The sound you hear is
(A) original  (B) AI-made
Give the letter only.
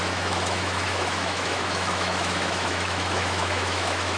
B